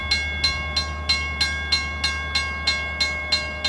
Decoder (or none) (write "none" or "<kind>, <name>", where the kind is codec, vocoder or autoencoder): none